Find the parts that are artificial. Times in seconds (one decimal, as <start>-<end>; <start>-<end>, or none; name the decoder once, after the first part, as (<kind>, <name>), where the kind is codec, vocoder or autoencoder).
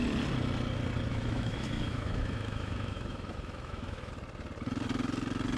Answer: 1.1-4.1 (autoencoder, DAC-VAE)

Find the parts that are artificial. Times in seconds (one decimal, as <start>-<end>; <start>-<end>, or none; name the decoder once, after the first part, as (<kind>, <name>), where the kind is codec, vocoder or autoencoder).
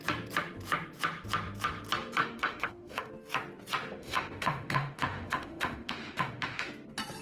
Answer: 2.2-3.1 (autoencoder, DAC-VAE); 4.0-6.7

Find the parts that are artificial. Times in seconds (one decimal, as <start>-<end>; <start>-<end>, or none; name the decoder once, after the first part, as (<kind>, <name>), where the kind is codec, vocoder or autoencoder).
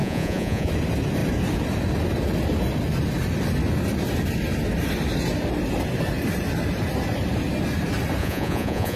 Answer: 0.0-0.7 (vocoder, Vocos); 8.2-9.0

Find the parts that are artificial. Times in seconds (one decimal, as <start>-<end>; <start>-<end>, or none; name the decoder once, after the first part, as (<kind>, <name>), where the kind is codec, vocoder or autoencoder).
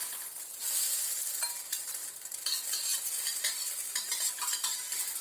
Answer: none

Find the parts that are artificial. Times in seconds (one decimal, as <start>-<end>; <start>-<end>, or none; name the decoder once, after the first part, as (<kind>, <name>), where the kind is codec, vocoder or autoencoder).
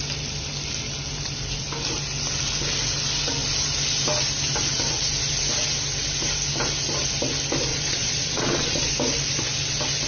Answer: 7.7-8.9 (vocoder, Vocos)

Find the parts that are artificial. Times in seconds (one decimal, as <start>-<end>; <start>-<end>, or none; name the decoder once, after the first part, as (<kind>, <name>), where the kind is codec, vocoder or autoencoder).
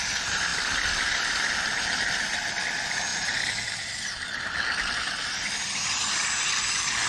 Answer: none